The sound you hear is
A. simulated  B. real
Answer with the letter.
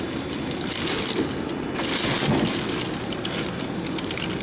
B